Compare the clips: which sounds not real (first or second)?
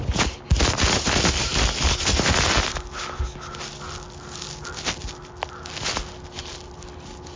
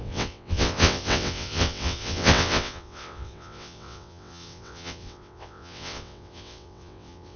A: second